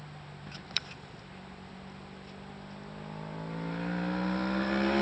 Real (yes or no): yes